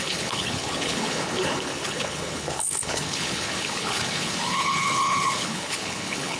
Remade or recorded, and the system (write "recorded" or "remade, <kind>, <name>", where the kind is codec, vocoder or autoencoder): remade, codec, HILCodec